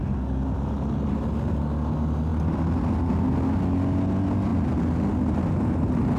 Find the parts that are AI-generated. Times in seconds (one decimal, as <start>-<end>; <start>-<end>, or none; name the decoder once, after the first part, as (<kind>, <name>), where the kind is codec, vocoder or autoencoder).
none